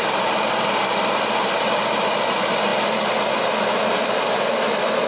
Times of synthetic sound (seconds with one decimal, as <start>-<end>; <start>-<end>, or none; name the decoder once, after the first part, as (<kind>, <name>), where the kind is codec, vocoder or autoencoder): none